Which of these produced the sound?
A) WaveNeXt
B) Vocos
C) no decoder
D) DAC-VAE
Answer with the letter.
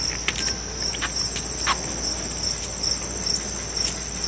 C